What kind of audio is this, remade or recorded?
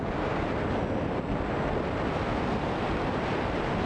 recorded